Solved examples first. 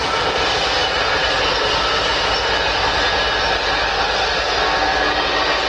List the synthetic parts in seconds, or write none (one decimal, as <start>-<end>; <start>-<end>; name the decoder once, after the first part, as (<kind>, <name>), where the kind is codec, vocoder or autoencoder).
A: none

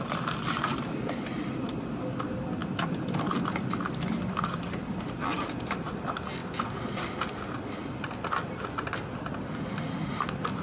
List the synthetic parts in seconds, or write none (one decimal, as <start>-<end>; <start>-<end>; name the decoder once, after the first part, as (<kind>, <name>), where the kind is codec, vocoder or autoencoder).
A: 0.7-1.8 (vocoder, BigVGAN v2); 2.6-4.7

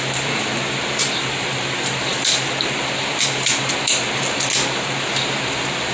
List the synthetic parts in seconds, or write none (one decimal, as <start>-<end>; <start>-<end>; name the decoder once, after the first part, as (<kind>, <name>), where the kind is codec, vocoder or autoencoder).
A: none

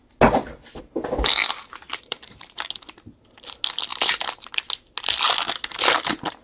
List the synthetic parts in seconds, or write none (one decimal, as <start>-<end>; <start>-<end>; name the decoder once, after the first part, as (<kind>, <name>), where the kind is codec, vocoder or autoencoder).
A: 1.9-2.7 (vocoder, BigVGAN v2)

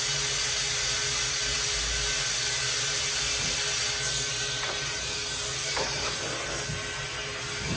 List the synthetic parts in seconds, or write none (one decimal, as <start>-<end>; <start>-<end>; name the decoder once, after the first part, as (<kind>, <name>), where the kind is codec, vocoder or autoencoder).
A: 5.5-6.5 (vocoder, BigVGAN v2)

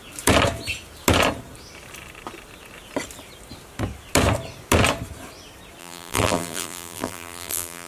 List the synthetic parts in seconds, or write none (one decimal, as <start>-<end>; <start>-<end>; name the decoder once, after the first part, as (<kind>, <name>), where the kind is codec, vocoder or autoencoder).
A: 5.8-7.9 (vocoder, BigVGAN v2)

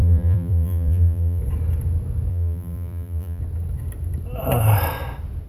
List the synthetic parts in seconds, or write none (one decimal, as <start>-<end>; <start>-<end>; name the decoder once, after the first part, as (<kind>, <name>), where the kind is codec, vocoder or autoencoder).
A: 0.0-1.4 (vocoder, BigVGAN v2); 2.3-3.4

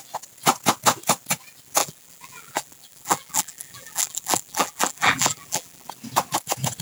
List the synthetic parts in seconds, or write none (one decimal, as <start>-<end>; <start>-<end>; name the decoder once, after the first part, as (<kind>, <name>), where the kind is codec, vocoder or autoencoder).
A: 1.8-5.9 (vocoder, BigVGAN v2)